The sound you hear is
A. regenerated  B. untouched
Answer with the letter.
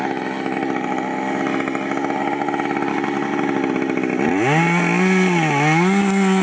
B